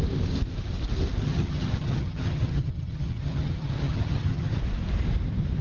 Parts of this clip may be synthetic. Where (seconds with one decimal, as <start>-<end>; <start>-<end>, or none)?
1.2-4.6